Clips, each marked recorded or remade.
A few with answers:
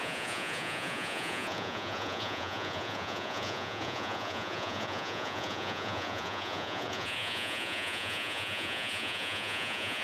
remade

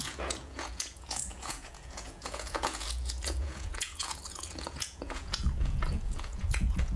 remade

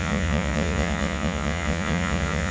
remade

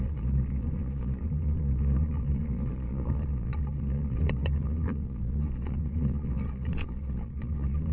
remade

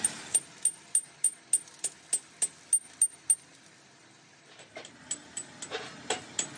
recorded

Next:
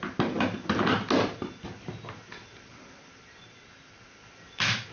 recorded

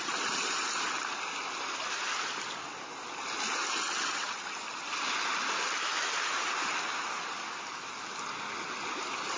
recorded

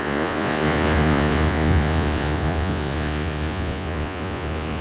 remade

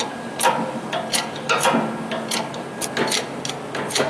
recorded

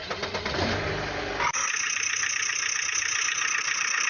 recorded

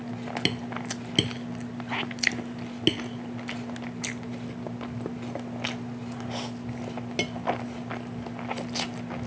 recorded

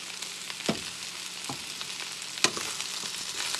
recorded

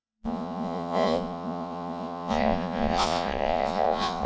remade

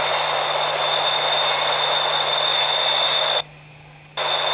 recorded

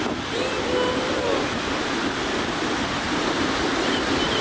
recorded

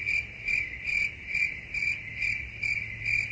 recorded